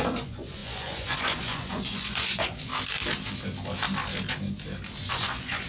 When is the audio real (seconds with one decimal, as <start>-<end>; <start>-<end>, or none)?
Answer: 2.7-5.1